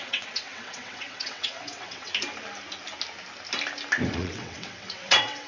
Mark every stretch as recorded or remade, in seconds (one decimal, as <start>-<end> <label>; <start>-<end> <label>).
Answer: 0.0-2.1 remade; 2.1-4.1 recorded; 4.1-5.5 remade